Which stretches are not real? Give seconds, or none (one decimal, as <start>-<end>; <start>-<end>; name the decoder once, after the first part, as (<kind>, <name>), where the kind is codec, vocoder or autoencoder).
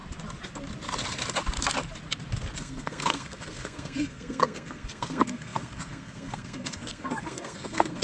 2.6-8.0 (codec, SNAC)